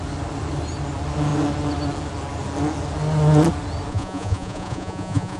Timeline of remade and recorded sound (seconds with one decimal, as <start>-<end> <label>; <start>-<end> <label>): 0.0-3.9 recorded; 3.9-5.4 remade